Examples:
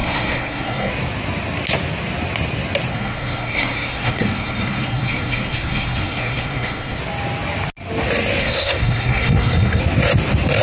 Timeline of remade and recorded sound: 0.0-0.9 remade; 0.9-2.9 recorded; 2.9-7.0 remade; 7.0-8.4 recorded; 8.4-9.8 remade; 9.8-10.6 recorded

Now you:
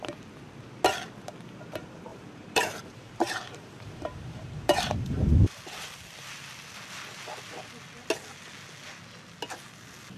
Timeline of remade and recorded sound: 0.0-2.1 recorded; 2.1-5.6 remade; 5.6-10.2 recorded

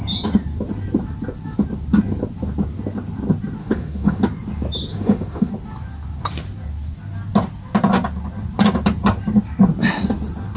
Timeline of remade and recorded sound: 0.0-3.6 recorded; 3.6-4.2 remade; 4.2-4.9 recorded; 4.9-5.5 remade; 5.5-10.6 recorded

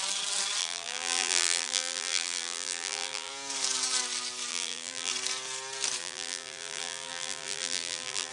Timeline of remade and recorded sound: 0.0-0.6 recorded; 0.6-3.3 remade; 3.3-4.5 recorded; 4.5-5.1 remade; 5.1-6.0 recorded; 6.0-8.3 remade

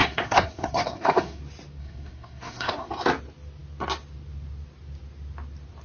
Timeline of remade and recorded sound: 0.0-1.4 remade; 1.4-1.8 recorded; 1.8-2.9 remade; 2.9-5.8 recorded

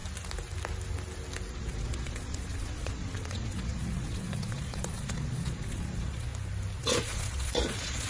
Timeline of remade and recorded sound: 0.0-1.5 recorded; 1.5-6.3 remade; 6.3-6.8 recorded; 6.8-8.1 remade

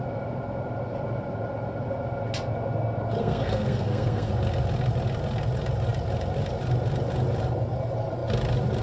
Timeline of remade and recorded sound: 0.0-3.2 recorded; 3.2-4.3 remade; 4.3-8.8 recorded

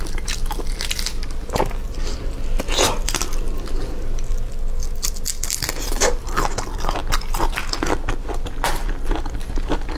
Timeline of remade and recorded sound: 0.0-10.0 recorded